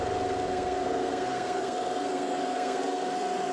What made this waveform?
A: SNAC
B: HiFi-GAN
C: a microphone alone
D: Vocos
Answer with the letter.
A